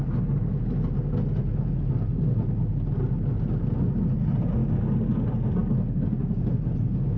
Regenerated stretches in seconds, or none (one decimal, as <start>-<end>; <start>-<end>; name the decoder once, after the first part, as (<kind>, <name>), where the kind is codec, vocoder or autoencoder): none